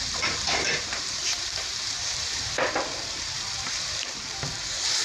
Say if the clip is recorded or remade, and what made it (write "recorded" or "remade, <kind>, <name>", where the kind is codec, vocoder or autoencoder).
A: remade, vocoder, BigVGAN v2